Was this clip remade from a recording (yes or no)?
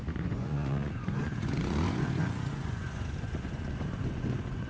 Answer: yes